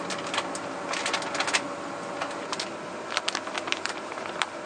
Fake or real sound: real